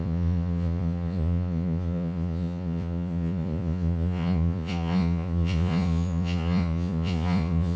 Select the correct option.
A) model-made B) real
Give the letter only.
A